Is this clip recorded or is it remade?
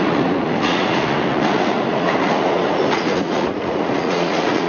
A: remade